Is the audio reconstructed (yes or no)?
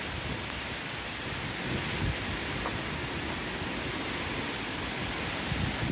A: no